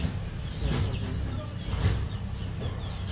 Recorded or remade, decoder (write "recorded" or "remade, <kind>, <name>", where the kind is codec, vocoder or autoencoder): recorded